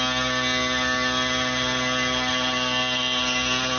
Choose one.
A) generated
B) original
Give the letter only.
B